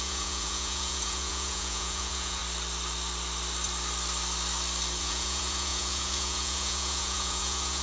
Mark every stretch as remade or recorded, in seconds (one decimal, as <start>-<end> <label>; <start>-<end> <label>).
0.0-2.4 remade; 2.4-5.0 recorded; 5.0-7.8 remade